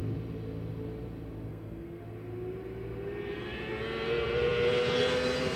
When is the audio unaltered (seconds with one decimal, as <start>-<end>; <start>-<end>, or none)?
0.0-1.5; 2.0-5.6